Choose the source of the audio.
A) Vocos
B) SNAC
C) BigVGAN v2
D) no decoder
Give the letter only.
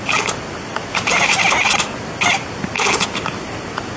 D